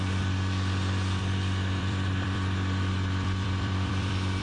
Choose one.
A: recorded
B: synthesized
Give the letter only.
B